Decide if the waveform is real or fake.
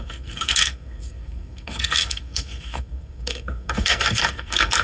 fake